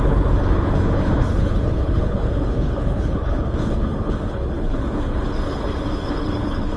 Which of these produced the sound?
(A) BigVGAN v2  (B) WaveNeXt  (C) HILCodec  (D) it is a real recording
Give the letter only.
C